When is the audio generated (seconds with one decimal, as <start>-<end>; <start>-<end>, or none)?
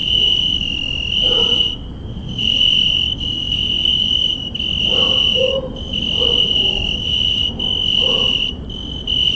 0.0-9.4